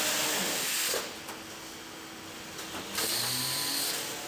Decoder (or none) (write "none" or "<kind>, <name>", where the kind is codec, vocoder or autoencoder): none